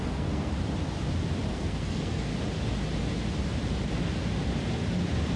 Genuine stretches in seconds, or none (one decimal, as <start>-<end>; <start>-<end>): 0.5-1.5; 2.3-5.4